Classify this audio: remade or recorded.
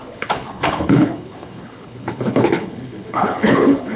remade